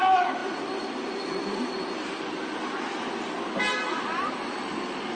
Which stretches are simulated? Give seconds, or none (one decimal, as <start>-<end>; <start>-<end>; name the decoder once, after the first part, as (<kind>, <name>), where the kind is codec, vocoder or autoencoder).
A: 3.8-4.5 (vocoder, BigVGAN v2)